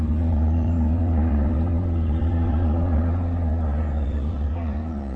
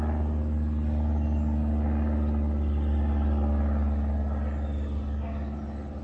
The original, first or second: second